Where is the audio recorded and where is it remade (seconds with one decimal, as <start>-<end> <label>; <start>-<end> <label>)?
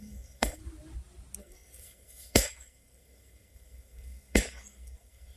0.0-0.6 remade; 0.6-1.4 recorded; 1.4-5.4 remade